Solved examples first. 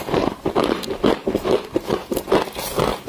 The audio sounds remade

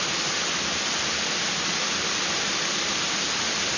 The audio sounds recorded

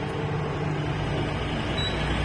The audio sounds recorded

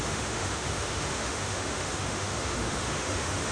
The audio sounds remade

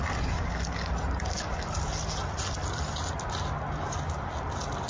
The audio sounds recorded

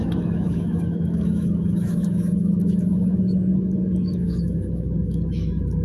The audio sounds remade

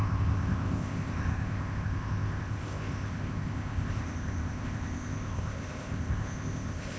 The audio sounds remade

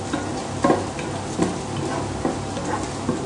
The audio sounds recorded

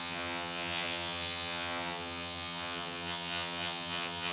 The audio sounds remade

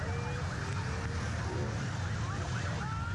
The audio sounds recorded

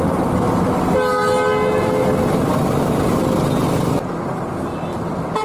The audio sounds recorded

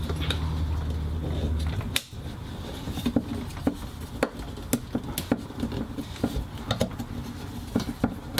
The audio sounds recorded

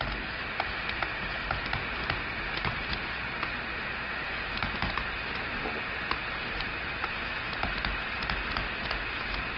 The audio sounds recorded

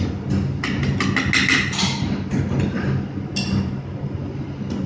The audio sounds recorded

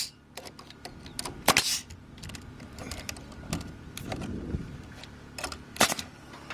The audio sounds recorded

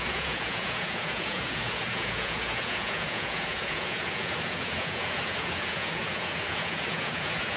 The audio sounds remade